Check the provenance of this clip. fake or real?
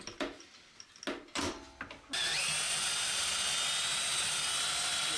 real